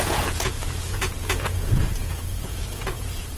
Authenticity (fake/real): fake